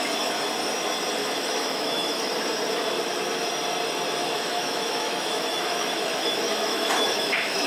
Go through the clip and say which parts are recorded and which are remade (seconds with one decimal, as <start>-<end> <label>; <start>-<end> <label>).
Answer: 0.0-1.2 recorded; 1.2-2.3 remade; 2.3-4.2 recorded; 4.2-7.7 remade